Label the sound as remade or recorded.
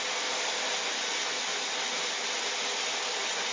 recorded